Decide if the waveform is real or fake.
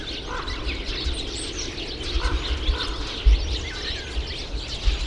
real